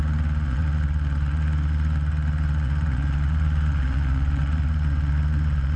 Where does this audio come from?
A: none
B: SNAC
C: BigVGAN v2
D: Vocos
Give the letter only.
D